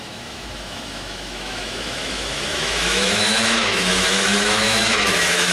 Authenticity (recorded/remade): remade